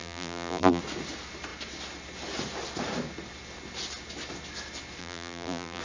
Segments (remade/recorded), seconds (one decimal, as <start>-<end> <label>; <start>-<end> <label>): 0.0-0.8 remade; 0.8-5.0 recorded; 5.0-5.8 remade